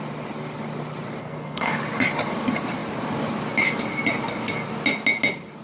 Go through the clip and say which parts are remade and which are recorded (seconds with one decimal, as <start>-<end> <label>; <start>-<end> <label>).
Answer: 0.0-1.2 recorded; 1.2-1.8 remade; 1.8-5.6 recorded